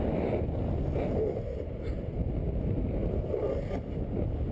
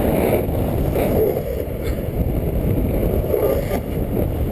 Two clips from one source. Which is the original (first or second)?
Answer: first